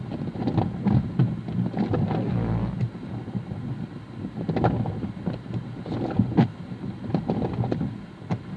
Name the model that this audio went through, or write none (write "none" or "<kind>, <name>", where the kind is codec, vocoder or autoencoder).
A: none